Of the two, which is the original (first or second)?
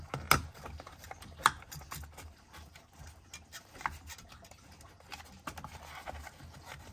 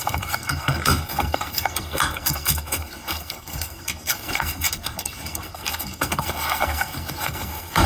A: first